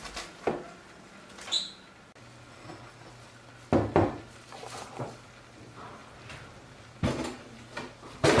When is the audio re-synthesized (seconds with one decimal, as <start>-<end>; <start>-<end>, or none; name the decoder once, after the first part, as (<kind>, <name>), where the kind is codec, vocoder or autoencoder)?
none